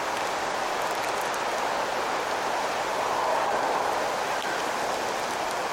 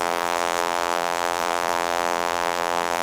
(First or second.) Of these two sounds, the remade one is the second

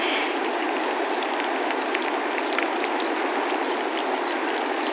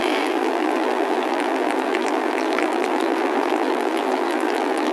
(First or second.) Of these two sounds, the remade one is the second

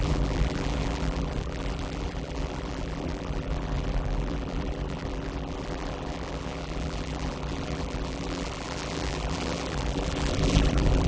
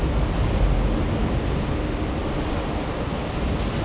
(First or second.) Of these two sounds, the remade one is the first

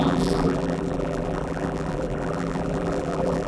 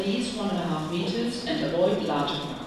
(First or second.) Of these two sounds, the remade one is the first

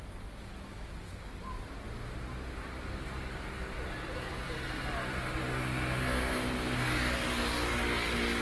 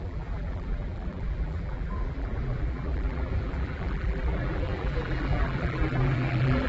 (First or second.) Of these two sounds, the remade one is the second